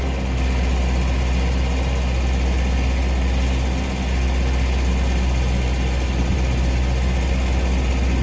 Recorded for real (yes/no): yes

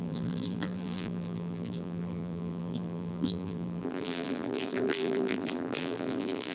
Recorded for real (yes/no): no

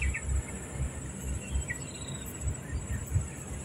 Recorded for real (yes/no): yes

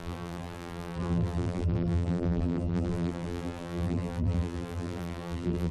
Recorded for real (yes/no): no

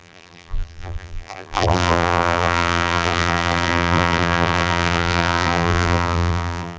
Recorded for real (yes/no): no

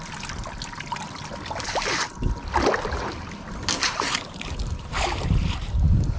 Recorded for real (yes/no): yes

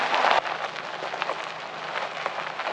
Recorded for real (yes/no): yes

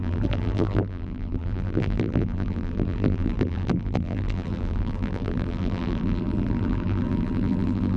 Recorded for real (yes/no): no